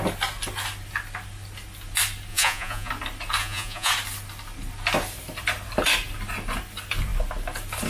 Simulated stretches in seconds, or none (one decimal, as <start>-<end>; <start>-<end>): 2.3-2.9; 3.4-3.9